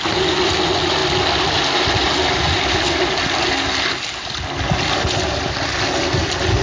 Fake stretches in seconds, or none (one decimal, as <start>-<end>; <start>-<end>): none